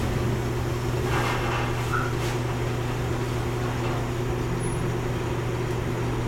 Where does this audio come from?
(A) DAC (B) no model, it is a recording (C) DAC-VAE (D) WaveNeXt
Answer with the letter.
B